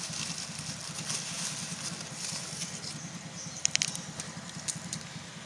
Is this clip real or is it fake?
real